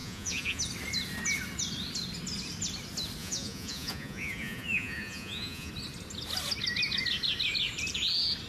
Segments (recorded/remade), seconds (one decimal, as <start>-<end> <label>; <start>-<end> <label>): 0.0-0.6 remade; 0.6-3.2 recorded; 3.2-5.7 remade; 5.7-8.5 recorded